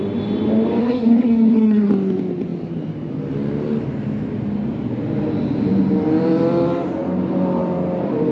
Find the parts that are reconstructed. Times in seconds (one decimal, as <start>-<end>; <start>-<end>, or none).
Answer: 0.8-1.9